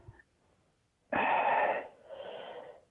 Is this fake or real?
real